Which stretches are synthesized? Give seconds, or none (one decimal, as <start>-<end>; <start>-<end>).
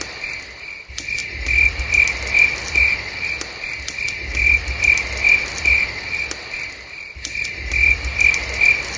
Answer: none